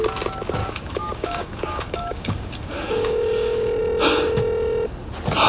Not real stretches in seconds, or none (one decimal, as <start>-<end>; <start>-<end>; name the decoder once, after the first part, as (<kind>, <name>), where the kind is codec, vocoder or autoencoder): 0.6-3.8 (codec, DAC)